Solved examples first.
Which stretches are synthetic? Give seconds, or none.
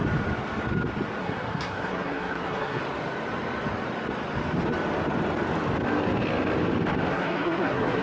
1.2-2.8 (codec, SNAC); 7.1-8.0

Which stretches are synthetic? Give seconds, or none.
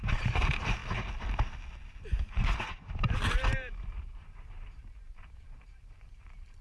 0.0-0.8 (vocoder, BigVGAN v2); 2.1-6.6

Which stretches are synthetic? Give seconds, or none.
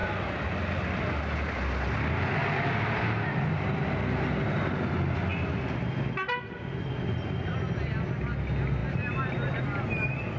none